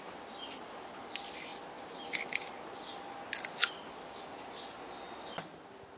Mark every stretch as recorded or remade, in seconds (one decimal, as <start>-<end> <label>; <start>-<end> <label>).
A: 0.0-6.0 recorded